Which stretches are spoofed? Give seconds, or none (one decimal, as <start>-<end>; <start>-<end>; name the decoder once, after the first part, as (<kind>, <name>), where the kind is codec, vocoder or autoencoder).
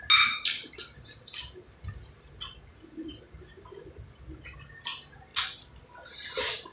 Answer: none